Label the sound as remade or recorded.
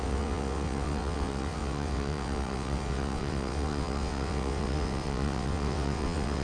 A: remade